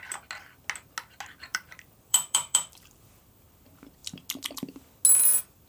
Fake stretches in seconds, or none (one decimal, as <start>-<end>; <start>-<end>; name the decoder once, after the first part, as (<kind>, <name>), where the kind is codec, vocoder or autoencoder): 1.5-3.2 (vocoder, BigVGAN v2)